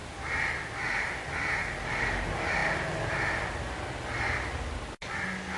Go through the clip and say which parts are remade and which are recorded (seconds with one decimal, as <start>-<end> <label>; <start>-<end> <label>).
0.0-5.6 recorded